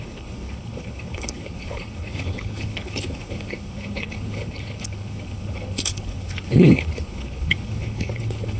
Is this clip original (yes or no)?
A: no